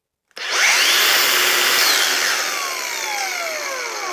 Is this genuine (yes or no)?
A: yes